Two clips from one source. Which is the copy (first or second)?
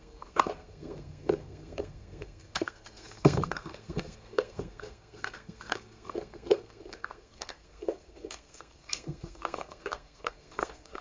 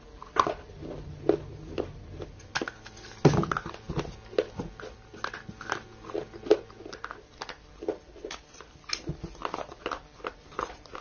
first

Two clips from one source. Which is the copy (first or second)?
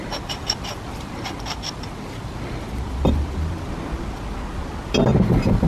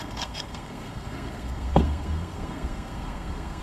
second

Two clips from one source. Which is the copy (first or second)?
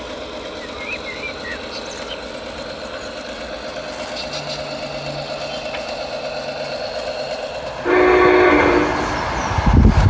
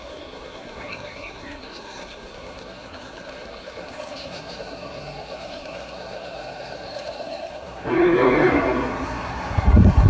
second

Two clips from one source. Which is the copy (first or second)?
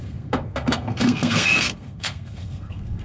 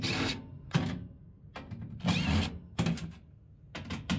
first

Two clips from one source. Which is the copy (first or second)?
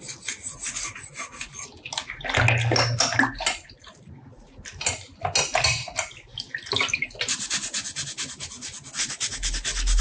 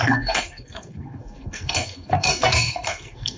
second